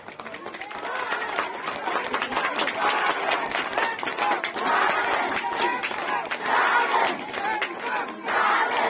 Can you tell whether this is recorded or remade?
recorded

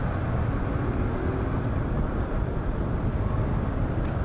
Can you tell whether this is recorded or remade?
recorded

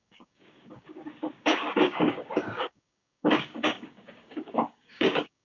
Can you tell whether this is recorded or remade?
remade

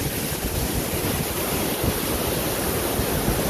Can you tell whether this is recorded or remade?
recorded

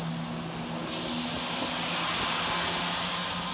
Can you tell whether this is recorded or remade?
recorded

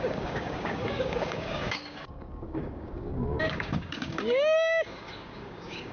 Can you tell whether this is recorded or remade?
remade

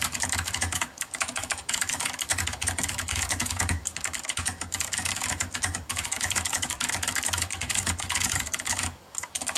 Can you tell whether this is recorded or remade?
remade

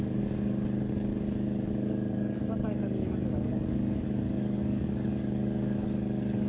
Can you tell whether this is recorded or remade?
remade